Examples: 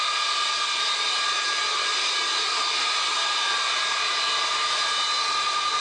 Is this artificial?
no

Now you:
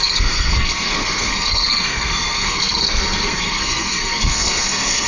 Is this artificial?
yes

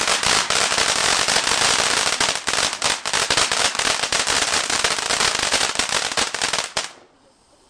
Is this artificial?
no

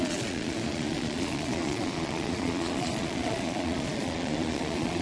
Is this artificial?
yes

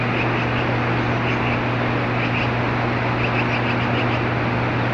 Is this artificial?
no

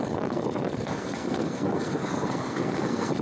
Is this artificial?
yes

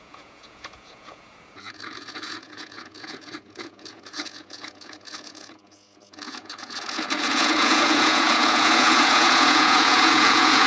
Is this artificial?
yes